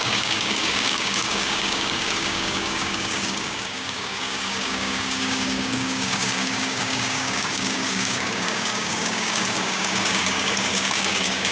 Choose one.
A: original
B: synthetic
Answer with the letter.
B